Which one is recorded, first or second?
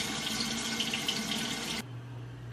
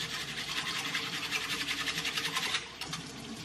first